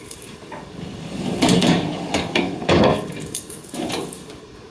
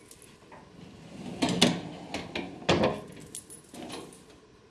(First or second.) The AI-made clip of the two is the first